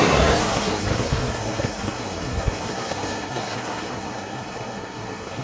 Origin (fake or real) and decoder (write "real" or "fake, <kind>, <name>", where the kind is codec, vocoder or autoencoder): fake, codec, SNAC